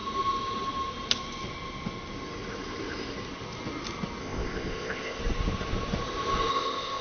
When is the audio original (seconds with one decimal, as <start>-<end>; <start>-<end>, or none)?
0.0-4.2; 5.2-6.5